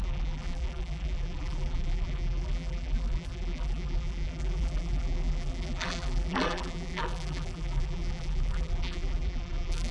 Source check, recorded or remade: remade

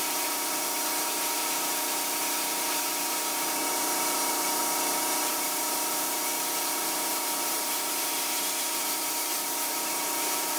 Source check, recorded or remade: remade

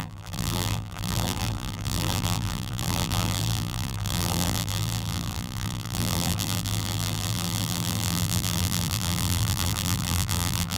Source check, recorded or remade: remade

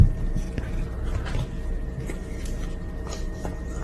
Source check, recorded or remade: recorded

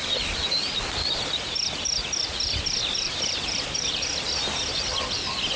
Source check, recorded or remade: remade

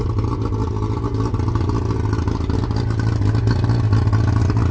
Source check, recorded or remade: recorded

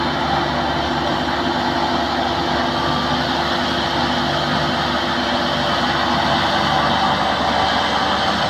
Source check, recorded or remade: recorded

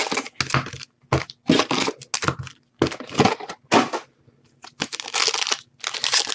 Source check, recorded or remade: recorded